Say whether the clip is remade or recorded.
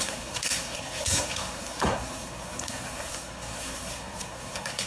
remade